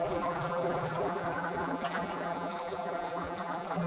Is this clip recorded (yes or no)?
no